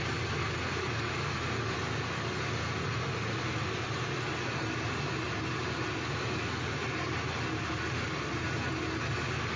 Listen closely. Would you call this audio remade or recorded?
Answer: recorded